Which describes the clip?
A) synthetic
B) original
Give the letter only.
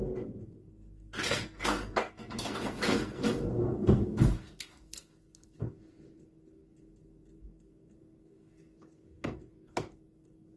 A